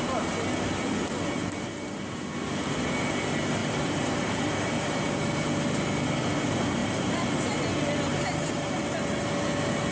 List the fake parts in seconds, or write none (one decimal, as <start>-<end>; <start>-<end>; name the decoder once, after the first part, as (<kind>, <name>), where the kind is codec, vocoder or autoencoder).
3.6-5.0 (vocoder, BigVGAN v2); 6.8-8.8